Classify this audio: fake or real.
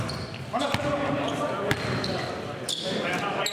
real